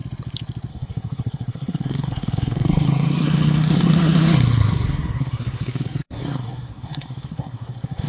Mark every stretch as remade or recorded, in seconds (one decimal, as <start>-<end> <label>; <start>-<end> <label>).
0.0-0.7 recorded; 0.7-8.1 remade